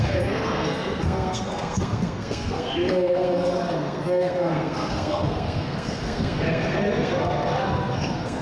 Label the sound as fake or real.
fake